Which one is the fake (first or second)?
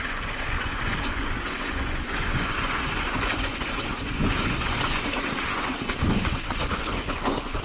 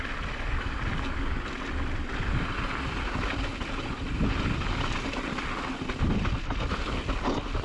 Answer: first